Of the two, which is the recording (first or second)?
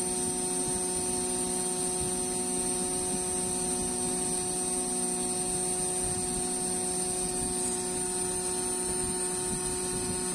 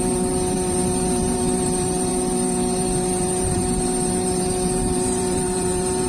first